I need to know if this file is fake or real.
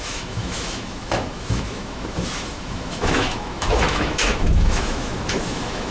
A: fake